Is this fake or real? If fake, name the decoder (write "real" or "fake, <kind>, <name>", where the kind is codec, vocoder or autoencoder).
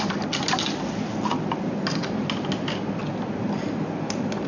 real